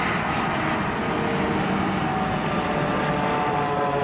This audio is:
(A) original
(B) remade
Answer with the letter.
A